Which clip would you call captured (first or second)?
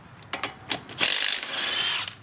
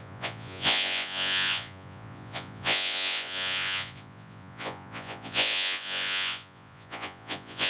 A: first